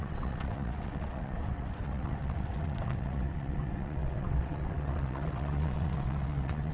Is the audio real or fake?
fake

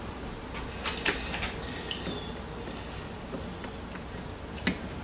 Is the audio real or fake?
real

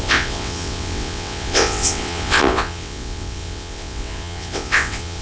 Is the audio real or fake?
fake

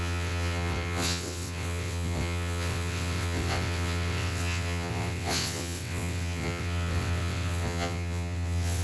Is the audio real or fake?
fake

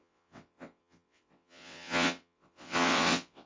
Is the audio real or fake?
fake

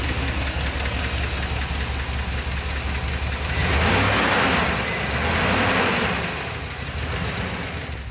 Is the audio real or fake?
real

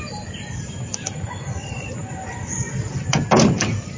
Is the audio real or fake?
real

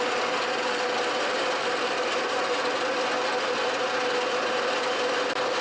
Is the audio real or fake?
real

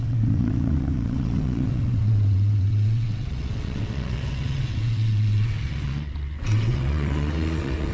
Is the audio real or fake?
fake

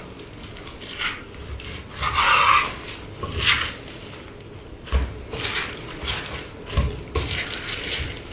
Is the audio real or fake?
real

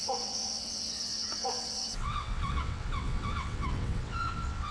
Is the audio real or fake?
fake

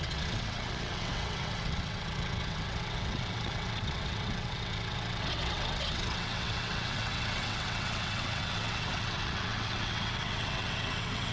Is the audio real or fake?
fake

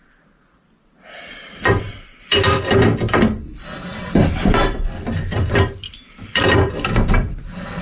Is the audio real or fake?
real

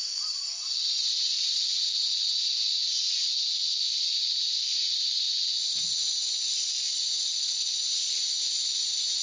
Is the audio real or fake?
real